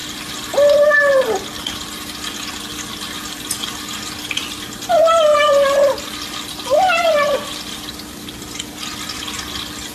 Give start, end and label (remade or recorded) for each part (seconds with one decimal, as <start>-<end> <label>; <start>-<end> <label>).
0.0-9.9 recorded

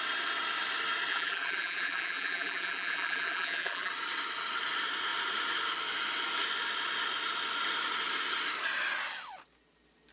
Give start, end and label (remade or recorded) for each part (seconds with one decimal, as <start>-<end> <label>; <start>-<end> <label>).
0.0-1.1 recorded; 1.1-3.9 remade; 3.9-10.1 recorded

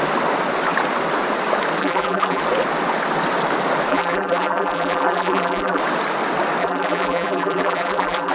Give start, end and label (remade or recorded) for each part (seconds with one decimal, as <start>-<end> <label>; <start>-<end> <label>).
0.0-1.8 recorded; 1.8-2.4 remade; 2.4-3.9 recorded; 3.9-5.8 remade; 5.8-6.6 recorded; 6.6-8.3 remade

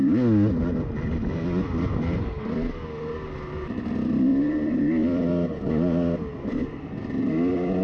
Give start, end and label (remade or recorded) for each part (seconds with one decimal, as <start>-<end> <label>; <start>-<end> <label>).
0.0-4.3 recorded; 4.3-5.3 remade; 5.3-7.8 recorded

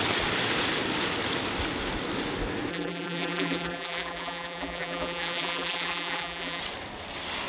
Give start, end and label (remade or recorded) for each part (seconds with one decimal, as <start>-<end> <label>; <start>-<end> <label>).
0.0-2.7 recorded; 2.7-6.6 remade; 6.6-7.5 recorded

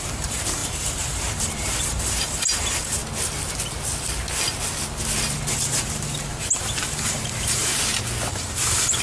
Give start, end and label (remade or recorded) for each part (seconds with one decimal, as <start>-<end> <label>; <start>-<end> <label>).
0.0-3.0 remade; 3.0-5.4 recorded; 5.4-7.7 remade; 7.7-8.3 recorded; 8.3-9.0 remade